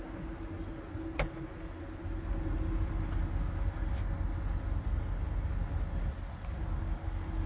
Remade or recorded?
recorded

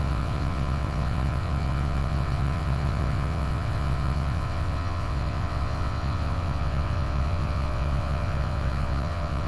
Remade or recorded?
remade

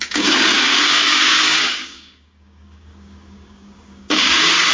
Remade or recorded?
remade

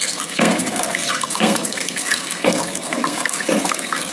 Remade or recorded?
remade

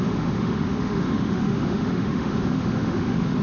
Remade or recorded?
remade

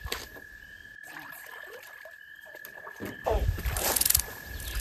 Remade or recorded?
remade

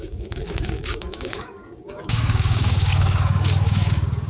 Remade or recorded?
remade